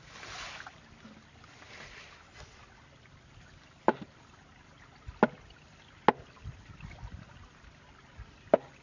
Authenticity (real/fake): real